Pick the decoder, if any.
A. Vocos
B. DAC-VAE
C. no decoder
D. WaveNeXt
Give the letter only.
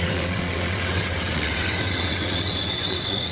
D